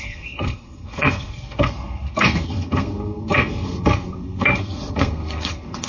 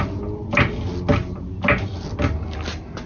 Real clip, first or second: second